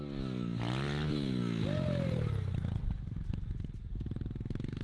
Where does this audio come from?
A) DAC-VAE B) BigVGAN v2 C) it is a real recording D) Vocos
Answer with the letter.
C